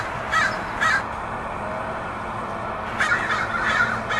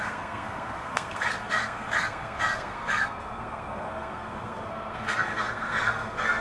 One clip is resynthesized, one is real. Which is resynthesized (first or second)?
second